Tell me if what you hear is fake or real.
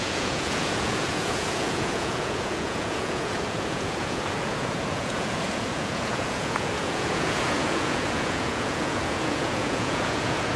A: fake